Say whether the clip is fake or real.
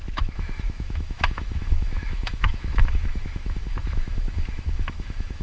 fake